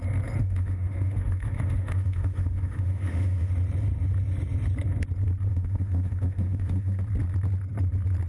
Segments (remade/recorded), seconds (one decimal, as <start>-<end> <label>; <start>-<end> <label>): 0.0-0.4 recorded; 0.4-3.5 remade; 3.5-5.5 recorded; 5.5-7.0 remade; 7.0-8.3 recorded